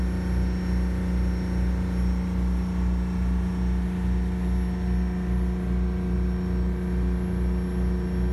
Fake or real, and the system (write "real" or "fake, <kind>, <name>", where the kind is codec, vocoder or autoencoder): real